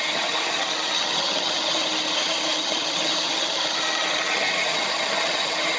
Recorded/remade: remade